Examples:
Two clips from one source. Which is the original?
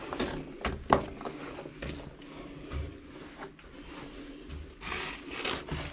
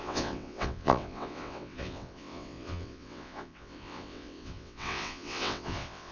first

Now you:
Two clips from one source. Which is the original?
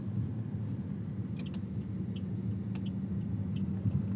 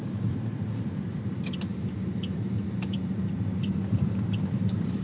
first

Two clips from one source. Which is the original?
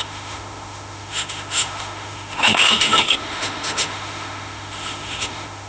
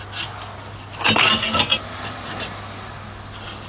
second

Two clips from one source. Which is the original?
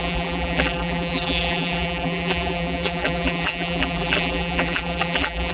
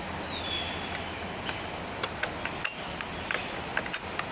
second